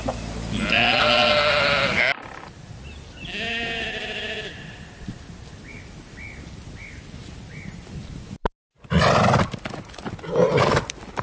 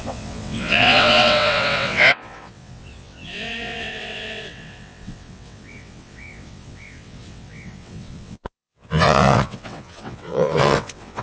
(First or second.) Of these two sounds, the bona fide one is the first